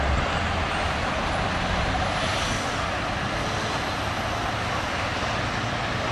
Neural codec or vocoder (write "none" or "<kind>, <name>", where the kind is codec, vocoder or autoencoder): none